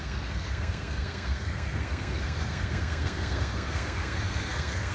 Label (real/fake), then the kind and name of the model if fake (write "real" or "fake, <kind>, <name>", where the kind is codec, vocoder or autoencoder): fake, codec, SNAC